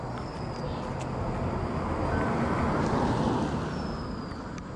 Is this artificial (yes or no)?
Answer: no